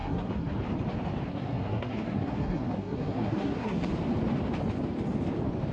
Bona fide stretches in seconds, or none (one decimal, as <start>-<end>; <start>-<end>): 0.6-1.3; 3.9-5.7